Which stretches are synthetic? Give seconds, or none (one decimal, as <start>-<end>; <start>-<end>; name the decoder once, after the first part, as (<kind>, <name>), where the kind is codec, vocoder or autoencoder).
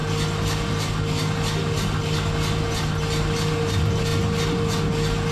none